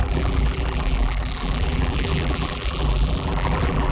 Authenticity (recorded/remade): remade